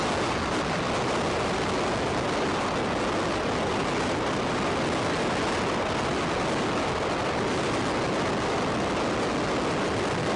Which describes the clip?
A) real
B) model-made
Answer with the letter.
A